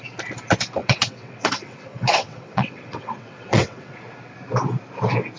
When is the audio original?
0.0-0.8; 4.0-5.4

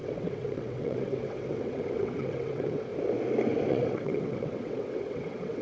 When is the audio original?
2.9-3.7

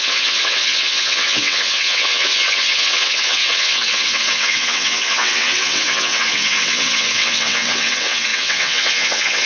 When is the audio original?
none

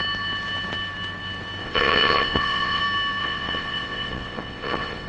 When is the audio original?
0.0-1.6; 2.8-3.2

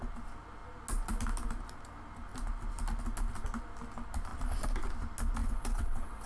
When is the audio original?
0.0-5.4